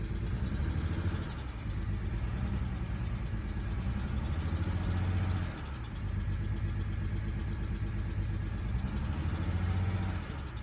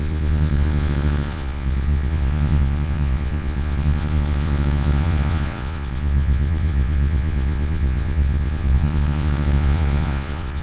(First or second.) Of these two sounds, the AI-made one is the second